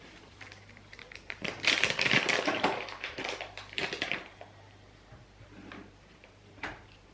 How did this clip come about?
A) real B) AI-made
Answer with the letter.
B